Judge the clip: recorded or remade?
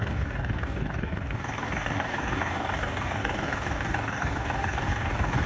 remade